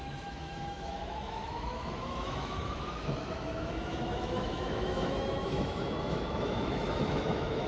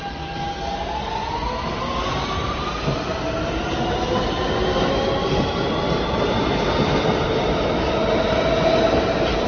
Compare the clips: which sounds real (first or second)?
second